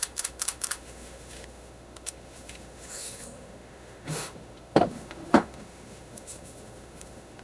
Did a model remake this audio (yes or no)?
yes